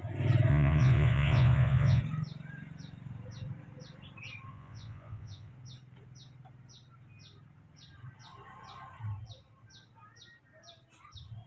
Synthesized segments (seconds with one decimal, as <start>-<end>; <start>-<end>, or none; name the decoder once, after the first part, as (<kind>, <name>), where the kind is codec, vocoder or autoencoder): 0.5-2.0 (vocoder, Vocos); 4.5-5.5

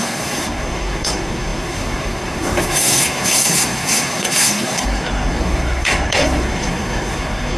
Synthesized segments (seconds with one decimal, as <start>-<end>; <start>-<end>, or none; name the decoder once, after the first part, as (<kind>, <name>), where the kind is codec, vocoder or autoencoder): 0.0-7.6 (codec, SNAC)

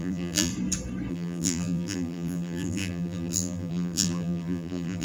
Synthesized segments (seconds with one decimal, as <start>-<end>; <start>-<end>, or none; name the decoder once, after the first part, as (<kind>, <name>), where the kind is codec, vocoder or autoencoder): 0.0-0.5 (vocoder, BigVGAN v2); 1.1-5.0

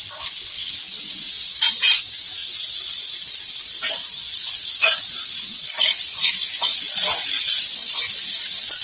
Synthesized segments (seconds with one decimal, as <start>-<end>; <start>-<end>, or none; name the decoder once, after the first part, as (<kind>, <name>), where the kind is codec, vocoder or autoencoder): 1.4-2.0 (vocoder, Vocos); 2.4-6.3; 6.7-7.6

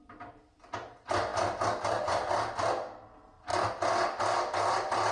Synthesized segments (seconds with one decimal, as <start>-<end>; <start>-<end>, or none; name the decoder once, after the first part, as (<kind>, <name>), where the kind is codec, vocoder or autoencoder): none

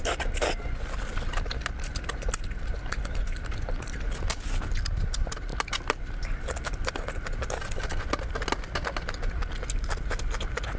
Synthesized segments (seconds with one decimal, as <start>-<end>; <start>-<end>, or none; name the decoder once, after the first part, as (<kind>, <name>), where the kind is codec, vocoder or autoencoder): 1.1-3.4 (vocoder, BigVGAN v2); 5.5-8.3

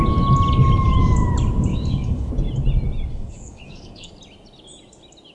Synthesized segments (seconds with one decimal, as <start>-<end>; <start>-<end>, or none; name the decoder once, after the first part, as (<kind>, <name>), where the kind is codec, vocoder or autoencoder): 1.7-2.3 (codec, DAC); 3.1-4.1